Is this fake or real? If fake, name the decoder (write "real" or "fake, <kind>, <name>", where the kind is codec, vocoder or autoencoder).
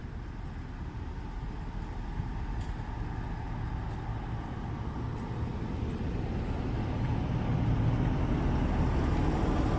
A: real